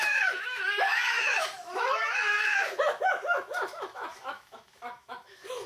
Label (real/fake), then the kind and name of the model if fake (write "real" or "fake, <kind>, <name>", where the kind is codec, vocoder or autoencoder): fake, autoencoder, DAC-VAE